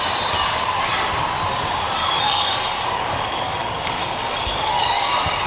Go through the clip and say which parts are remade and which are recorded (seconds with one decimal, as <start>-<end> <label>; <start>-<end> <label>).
0.0-2.0 recorded; 2.0-5.5 remade

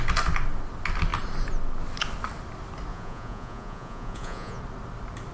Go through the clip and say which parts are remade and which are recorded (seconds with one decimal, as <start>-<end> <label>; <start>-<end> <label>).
0.0-2.9 recorded; 2.9-4.6 remade; 4.6-5.3 recorded

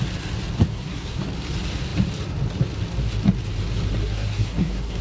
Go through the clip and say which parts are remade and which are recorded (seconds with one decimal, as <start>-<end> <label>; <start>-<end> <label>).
0.0-0.6 recorded; 0.6-1.2 remade; 1.2-4.0 recorded; 4.0-5.0 remade

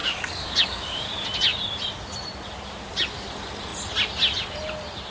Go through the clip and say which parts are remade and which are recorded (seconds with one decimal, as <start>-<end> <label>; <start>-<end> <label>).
0.0-1.1 remade; 1.1-5.1 recorded